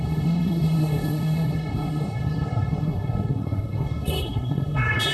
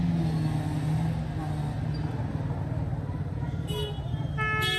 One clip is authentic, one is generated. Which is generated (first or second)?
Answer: first